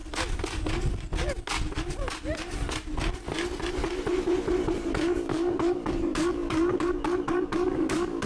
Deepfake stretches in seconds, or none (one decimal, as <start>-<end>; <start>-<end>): 4.9-8.3